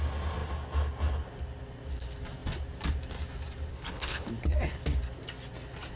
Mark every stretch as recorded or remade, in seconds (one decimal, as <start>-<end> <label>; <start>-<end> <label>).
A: 0.0-3.7 recorded; 3.7-4.3 remade; 4.3-6.0 recorded

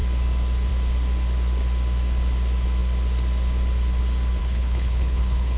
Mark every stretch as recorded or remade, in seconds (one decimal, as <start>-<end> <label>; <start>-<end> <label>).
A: 0.0-4.4 recorded; 4.4-5.6 remade